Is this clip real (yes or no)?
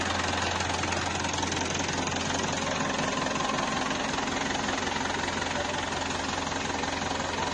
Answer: yes